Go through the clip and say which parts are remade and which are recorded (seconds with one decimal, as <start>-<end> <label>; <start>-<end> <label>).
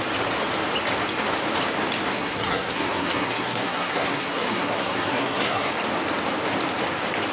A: 0.0-2.1 recorded; 2.1-5.7 remade; 5.7-7.3 recorded